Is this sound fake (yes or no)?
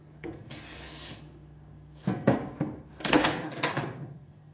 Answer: yes